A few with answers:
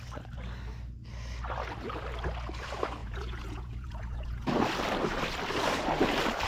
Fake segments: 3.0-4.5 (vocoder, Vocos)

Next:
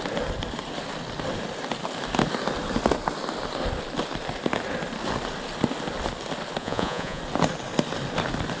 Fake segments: 6.6-7.2 (vocoder, Vocos)